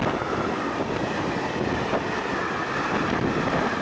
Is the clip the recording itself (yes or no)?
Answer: no